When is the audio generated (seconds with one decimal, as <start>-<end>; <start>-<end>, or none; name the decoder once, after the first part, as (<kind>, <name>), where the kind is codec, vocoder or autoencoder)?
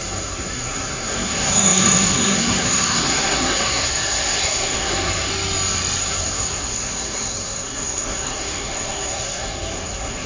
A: 0.0-5.3 (codec, SNAC); 6.0-10.3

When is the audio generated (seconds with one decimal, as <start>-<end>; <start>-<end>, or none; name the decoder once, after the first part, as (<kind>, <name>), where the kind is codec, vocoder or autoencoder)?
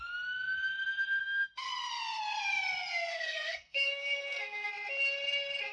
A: 1.2-1.7 (codec, SNAC); 3.1-4.7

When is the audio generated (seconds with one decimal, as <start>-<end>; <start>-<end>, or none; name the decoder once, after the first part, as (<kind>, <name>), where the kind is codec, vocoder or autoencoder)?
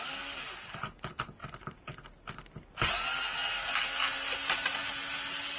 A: none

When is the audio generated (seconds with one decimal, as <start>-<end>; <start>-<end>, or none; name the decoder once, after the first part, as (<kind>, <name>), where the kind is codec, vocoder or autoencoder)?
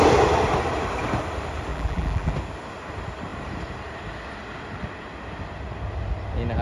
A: 1.7-2.3 (vocoder, BigVGAN v2)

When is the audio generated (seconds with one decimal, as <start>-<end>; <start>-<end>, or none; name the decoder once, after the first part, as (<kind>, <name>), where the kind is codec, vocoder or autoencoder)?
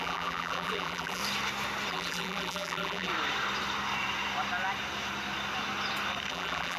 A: 0.0-1.2 (vocoder, BigVGAN v2); 1.9-3.1; 6.3-6.8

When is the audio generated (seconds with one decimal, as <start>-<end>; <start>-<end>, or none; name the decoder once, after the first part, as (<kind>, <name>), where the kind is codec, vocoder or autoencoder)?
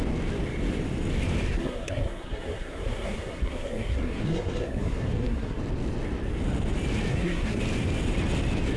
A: 1.5-5.6 (codec, SNAC); 7.1-7.6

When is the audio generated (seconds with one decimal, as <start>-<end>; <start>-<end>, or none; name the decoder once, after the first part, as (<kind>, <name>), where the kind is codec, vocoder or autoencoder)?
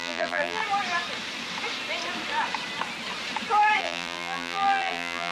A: 0.0-0.6 (vocoder, BigVGAN v2); 3.8-5.3